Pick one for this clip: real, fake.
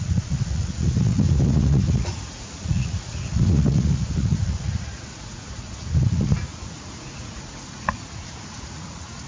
fake